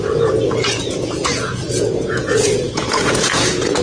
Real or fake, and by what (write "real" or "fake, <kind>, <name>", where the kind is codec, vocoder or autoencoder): fake, vocoder, Vocos